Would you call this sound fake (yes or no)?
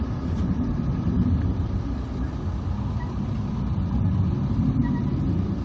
no